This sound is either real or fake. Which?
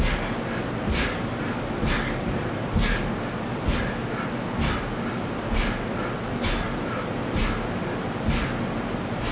real